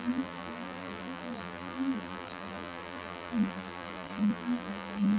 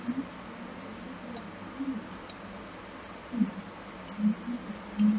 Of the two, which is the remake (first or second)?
first